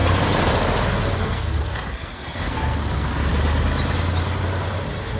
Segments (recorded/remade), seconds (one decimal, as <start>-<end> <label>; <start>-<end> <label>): 0.0-1.2 recorded; 1.2-3.3 remade; 3.3-5.2 recorded